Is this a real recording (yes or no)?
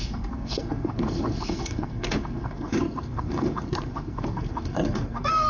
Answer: no